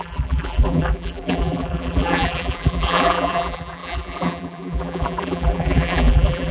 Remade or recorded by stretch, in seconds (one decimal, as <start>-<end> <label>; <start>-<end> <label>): 0.0-6.5 remade